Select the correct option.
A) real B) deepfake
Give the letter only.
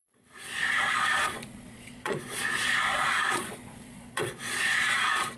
B